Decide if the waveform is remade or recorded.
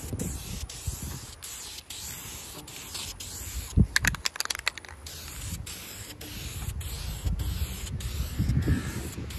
recorded